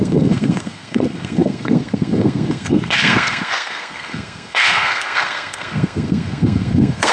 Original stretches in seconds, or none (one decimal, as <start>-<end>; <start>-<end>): none